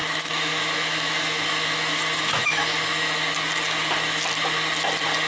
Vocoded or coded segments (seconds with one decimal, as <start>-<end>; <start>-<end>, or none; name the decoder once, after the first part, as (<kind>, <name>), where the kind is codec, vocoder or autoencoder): 0.0-3.2 (autoencoder, DAC-VAE)